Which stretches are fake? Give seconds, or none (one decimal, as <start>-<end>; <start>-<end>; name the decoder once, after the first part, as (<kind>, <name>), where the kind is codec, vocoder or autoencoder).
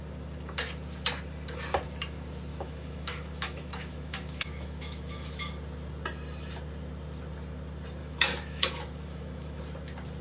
2.5-5.5 (autoencoder, DAC-VAE); 8.0-9.6